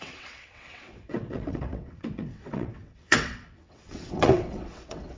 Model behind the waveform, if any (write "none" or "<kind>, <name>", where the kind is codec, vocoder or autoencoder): vocoder, WaveNeXt